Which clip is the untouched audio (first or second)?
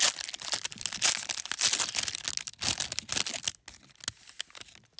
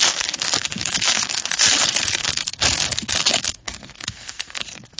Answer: first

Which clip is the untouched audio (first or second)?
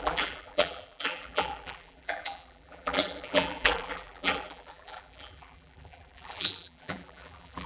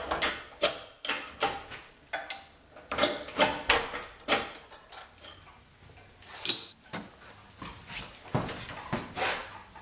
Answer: second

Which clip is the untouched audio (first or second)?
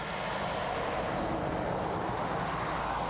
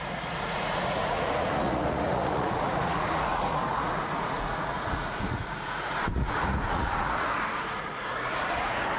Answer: first